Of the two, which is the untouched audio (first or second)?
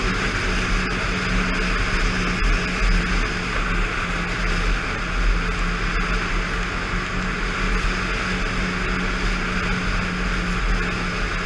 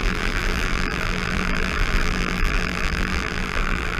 first